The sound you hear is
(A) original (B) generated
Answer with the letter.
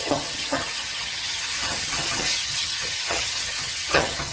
B